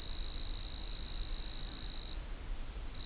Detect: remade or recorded recorded